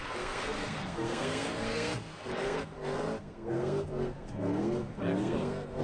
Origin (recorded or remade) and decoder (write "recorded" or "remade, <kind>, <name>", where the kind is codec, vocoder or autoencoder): remade, codec, SNAC